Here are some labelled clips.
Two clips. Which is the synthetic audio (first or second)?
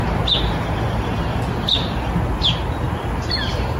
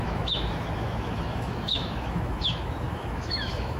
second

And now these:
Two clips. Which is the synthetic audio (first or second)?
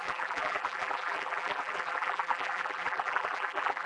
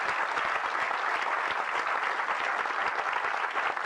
first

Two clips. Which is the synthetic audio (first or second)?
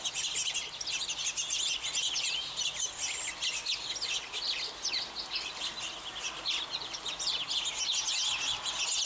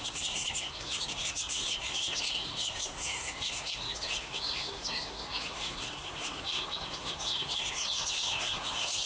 second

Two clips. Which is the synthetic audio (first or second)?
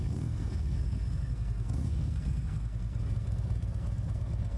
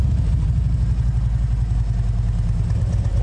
first